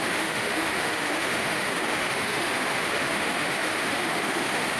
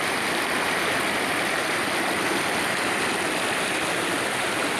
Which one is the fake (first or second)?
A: first